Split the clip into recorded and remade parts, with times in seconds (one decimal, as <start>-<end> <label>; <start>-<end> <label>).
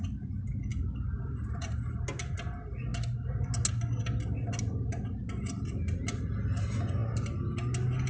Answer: 0.0-8.1 recorded